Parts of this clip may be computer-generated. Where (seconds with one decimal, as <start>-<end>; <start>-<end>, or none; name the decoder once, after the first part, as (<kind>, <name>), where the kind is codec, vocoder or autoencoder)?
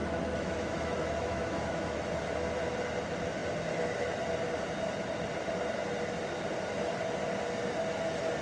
0.0-2.1 (autoencoder, DAC-VAE)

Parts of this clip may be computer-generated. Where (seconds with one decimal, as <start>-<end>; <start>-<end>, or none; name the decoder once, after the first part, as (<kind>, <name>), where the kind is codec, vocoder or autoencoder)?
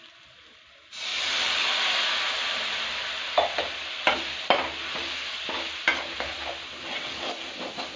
1.1-5.8 (vocoder, BigVGAN v2)